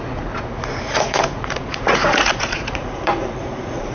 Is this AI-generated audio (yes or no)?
yes